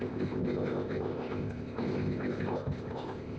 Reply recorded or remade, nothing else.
remade